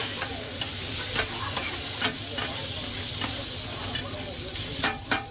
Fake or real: fake